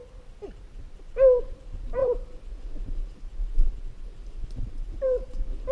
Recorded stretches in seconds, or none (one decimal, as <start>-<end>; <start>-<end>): 0.0-1.4; 2.0-5.0